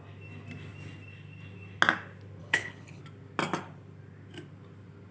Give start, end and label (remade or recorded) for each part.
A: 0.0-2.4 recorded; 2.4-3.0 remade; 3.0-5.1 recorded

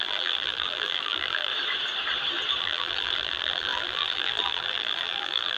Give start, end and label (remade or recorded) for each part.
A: 0.0-1.5 remade; 1.5-2.6 recorded; 2.6-5.6 remade

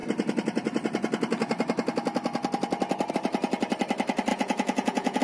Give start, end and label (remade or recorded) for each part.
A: 0.0-4.3 recorded; 4.3-5.2 remade

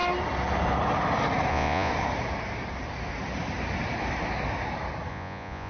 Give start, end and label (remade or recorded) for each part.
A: 0.0-1.5 recorded; 1.5-1.9 remade; 1.9-5.1 recorded; 5.1-5.7 remade

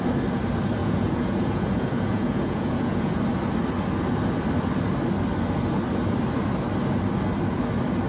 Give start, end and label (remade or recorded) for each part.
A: 0.0-0.8 recorded; 0.8-3.2 remade; 3.2-8.1 recorded

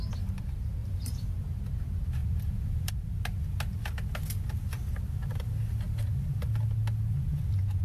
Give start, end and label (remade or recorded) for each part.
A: 0.0-0.8 recorded; 0.8-1.6 remade; 1.6-2.2 recorded; 2.2-2.9 remade; 2.9-7.8 recorded

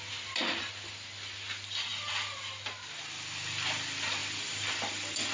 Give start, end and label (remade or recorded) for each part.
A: 0.0-1.9 recorded; 1.9-2.4 remade; 2.4-4.2 recorded; 4.2-5.3 remade